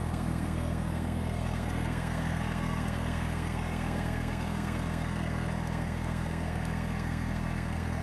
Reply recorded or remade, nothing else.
remade